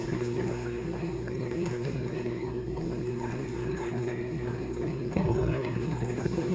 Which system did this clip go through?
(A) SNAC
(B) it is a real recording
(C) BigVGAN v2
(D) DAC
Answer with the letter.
A